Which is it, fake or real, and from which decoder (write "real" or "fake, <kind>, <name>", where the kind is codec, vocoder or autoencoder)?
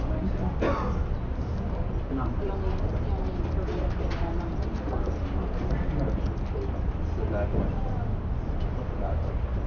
real